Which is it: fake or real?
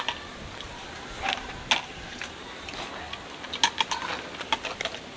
real